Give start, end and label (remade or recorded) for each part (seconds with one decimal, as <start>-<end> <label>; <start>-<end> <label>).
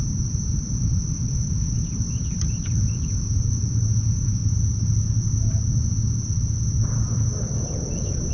0.0-4.4 remade; 4.4-8.3 recorded